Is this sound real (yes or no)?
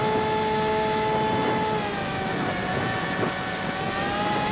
yes